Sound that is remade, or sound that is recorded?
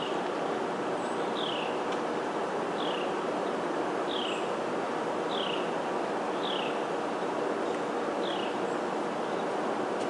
recorded